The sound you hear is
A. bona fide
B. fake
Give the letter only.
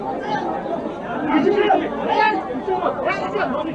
A